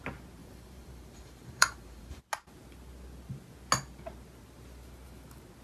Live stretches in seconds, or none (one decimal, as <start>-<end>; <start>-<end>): 0.0-0.4; 2.2-5.6

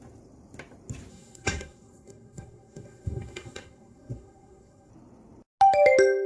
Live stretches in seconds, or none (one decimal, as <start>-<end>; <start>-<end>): 0.0-1.1; 4.9-6.3

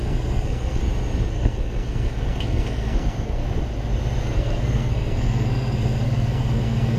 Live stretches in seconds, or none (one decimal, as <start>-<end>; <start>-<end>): 0.8-1.3; 3.4-4.2

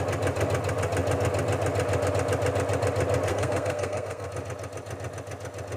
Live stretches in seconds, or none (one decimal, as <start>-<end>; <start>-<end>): 0.0-3.3; 4.3-5.8

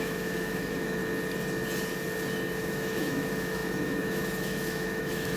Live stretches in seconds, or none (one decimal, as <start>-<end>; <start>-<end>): 1.0-2.6

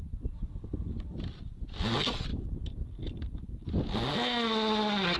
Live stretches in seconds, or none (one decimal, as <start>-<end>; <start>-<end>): 0.0-5.2